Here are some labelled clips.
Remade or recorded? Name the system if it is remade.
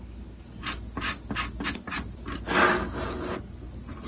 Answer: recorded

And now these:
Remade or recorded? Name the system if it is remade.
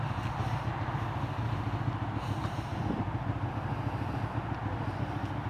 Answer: recorded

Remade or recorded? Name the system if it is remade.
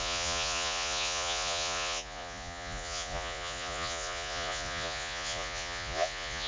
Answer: remade, vocoder, Vocos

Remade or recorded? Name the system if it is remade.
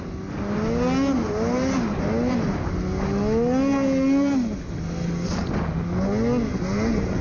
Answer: recorded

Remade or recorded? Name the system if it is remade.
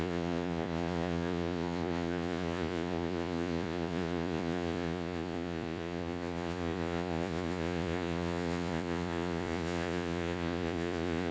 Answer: remade, vocoder, Vocos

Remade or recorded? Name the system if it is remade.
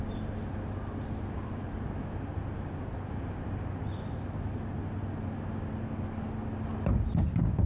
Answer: recorded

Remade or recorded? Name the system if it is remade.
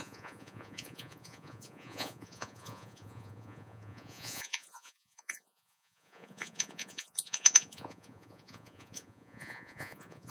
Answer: remade, vocoder, Vocos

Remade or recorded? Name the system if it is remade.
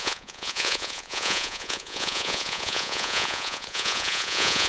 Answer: remade, vocoder, Vocos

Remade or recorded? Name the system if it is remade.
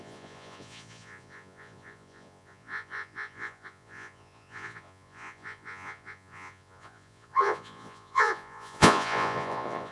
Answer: remade, vocoder, Vocos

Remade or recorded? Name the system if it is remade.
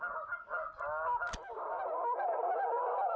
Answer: recorded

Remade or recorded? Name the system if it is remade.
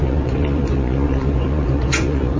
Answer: remade, vocoder, Vocos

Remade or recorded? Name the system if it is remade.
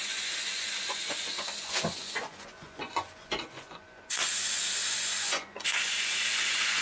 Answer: remade, vocoder, Vocos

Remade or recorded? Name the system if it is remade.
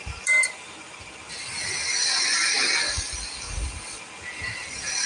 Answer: recorded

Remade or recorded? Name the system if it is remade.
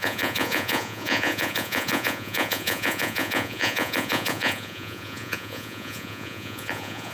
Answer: remade, vocoder, Vocos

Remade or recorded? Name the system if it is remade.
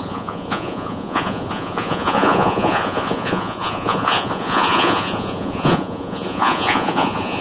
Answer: remade, vocoder, Vocos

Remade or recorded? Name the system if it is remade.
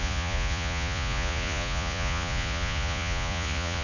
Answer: remade, vocoder, Vocos